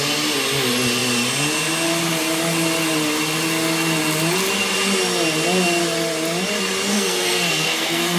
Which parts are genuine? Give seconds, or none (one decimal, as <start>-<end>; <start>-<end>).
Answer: 0.0-6.9